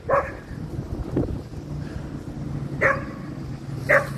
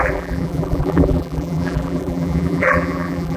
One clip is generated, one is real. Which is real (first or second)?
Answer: first